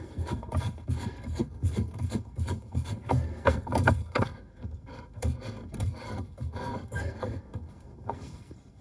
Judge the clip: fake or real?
fake